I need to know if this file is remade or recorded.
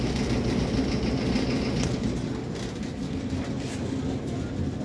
recorded